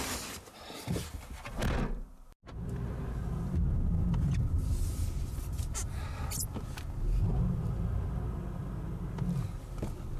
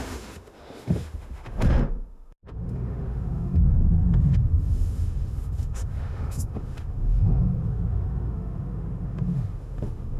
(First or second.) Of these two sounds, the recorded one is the first